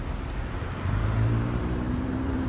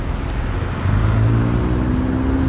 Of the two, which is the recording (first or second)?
second